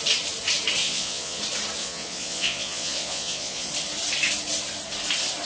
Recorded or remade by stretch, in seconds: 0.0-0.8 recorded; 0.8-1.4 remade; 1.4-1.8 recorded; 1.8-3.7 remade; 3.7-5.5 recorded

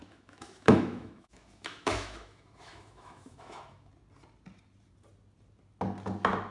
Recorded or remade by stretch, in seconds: 0.0-3.9 remade; 3.9-6.5 recorded

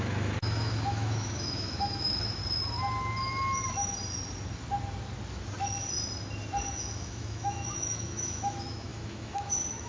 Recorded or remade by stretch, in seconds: 0.0-2.4 remade; 2.4-6.7 recorded; 6.7-9.9 remade

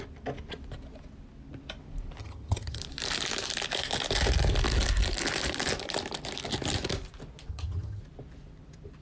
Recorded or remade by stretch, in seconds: 0.0-2.2 recorded; 2.2-2.8 remade; 2.8-7.5 recorded; 7.5-8.0 remade; 8.0-9.0 recorded

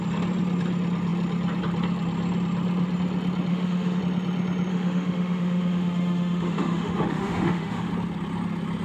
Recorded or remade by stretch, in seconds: 0.0-3.5 recorded; 3.5-4.0 remade; 4.0-4.7 recorded; 4.7-7.9 remade; 7.9-8.8 recorded